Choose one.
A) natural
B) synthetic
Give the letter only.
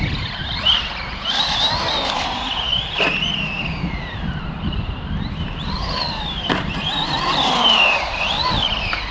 A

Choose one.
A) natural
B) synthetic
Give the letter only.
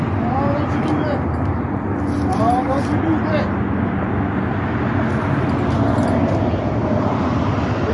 A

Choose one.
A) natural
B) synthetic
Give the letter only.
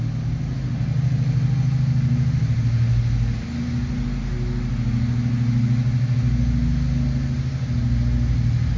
A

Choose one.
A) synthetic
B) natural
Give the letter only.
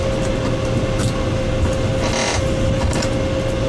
B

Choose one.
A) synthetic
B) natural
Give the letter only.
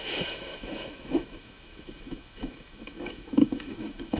A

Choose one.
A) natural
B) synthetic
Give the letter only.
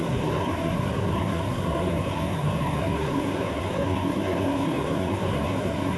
B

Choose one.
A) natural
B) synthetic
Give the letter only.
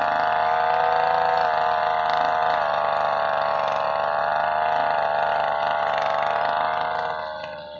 A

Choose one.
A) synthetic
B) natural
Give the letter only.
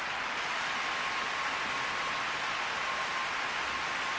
B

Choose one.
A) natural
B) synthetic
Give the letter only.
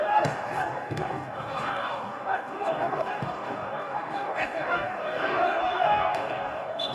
B